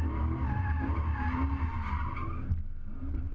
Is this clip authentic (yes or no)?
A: yes